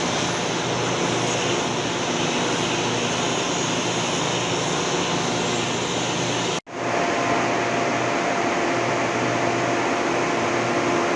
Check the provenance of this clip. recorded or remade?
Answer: recorded